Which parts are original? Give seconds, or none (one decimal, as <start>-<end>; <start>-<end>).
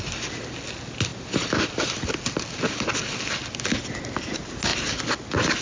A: 0.0-5.6